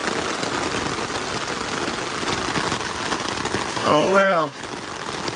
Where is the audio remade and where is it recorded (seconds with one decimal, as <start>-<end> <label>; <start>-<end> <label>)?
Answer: 0.0-3.7 recorded; 3.7-4.6 remade; 4.6-5.4 recorded